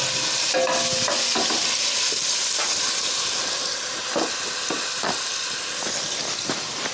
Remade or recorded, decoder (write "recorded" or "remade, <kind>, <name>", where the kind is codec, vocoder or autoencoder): recorded